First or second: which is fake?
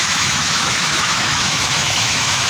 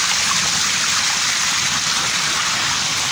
first